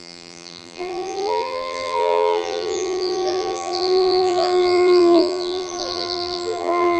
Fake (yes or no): yes